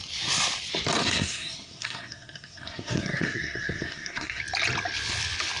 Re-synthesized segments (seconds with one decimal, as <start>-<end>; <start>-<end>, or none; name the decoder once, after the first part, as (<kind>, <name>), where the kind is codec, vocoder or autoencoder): 1.0-4.4 (codec, SNAC)